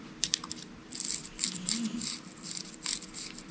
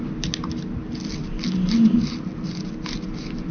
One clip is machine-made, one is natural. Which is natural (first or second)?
second